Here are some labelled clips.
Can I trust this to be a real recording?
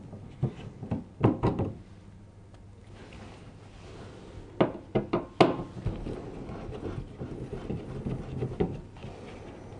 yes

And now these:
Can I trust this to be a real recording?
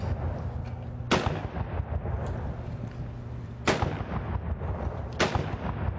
yes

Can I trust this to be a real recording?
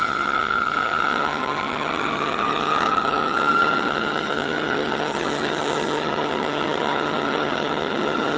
no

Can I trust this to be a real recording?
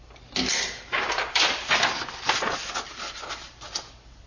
yes